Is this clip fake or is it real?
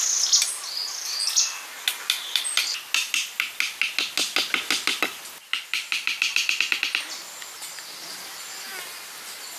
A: real